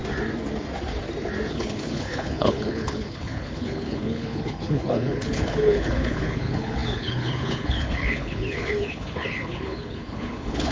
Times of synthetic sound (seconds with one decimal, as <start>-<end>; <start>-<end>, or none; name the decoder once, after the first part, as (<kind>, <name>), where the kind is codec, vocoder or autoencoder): 1.5-10.7 (codec, HILCodec)

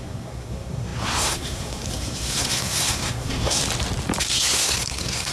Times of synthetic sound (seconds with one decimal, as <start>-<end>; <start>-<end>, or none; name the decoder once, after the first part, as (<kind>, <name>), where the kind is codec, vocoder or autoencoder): 0.0-3.6 (codec, SNAC); 4.2-5.3

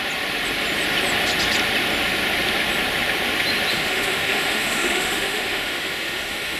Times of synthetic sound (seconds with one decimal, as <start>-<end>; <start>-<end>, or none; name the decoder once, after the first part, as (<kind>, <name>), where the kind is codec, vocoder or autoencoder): 3.7-6.6 (autoencoder, DAC-VAE)

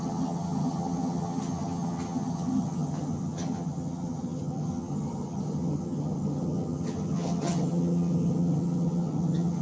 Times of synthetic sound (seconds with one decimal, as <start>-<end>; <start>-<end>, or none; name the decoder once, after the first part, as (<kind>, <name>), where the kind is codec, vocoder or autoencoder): 0.0-9.6 (vocoder, HiFi-GAN)

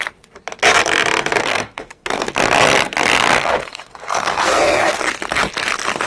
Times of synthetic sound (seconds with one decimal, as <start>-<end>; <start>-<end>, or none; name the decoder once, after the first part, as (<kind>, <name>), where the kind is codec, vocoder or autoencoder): 1.4-2.3 (codec, SNAC); 3.4-5.0